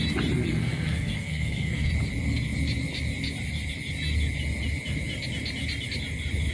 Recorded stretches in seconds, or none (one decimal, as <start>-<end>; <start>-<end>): 0.0-0.4; 1.9-6.5